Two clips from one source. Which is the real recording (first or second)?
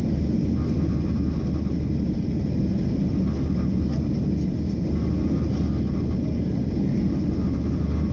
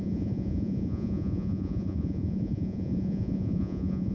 first